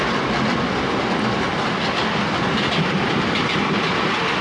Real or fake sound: real